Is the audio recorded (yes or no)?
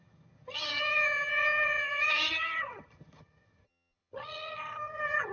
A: no